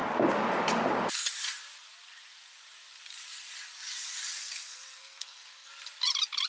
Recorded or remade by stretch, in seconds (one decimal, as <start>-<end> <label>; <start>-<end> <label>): 0.0-4.4 recorded; 4.4-5.7 remade; 5.7-6.5 recorded